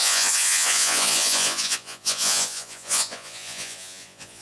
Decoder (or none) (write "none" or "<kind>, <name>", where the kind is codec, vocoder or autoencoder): vocoder, Vocos